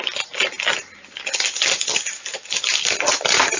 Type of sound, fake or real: real